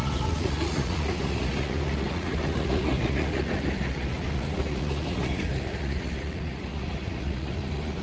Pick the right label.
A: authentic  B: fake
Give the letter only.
B